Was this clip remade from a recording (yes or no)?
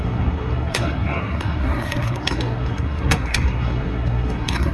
yes